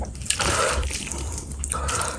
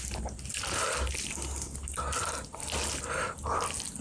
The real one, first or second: second